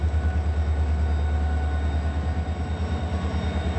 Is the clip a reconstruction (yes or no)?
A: no